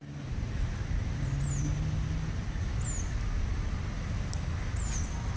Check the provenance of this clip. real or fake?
real